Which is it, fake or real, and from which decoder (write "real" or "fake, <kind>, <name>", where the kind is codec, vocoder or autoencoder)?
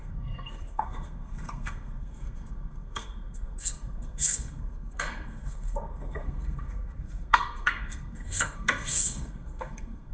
fake, codec, SNAC